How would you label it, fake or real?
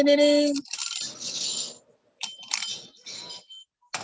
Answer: real